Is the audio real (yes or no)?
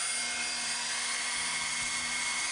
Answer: yes